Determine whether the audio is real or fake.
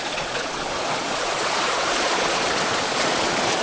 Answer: fake